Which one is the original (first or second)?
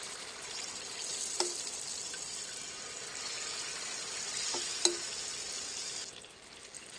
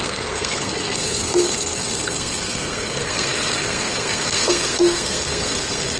first